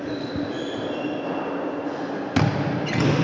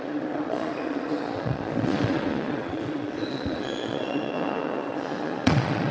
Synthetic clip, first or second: second